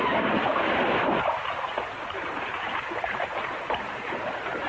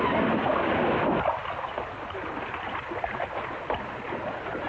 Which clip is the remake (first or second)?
first